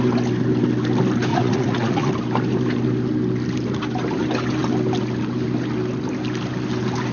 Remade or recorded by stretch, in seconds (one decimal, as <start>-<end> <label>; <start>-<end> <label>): 0.0-1.3 recorded; 1.3-2.1 remade; 2.1-7.1 recorded